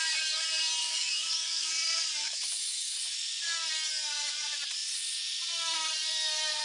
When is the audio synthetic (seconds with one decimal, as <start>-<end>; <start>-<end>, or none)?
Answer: 0.8-1.7; 2.2-3.0